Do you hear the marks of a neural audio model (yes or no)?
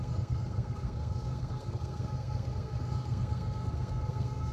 yes